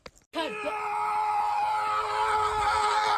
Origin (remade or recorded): recorded